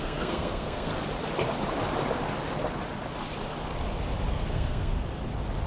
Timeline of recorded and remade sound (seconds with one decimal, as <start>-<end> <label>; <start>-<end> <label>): 0.0-0.9 remade; 0.9-4.3 recorded; 4.3-4.9 remade; 4.9-5.7 recorded